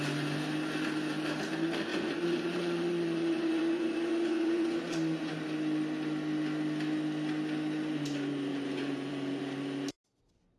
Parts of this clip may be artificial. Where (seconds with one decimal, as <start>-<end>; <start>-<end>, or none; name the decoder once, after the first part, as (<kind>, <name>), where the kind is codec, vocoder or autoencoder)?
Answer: 1.9-5.3 (vocoder, Vocos); 8.5-9.4